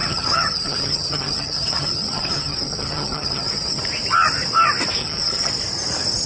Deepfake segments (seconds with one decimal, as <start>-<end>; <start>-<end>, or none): 0.0-3.8; 5.0-5.5